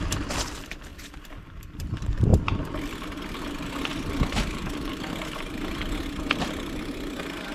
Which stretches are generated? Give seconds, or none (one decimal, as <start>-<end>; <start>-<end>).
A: 0.0-0.9; 1.9-2.3; 3.4-7.5